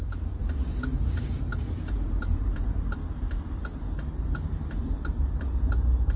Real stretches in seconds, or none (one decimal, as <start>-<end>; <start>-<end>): none